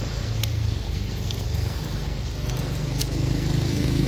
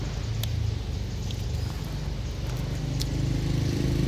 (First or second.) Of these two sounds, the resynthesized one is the first